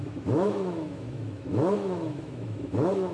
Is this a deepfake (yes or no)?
yes